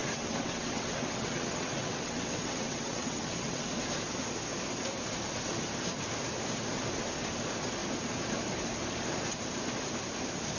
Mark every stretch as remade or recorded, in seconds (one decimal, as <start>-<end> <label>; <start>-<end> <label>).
0.0-3.7 remade; 3.7-10.6 recorded